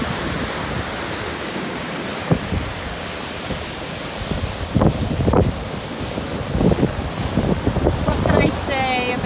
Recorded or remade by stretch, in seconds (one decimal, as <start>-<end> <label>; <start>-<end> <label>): 0.0-1.3 recorded; 1.3-1.9 remade; 1.9-9.3 recorded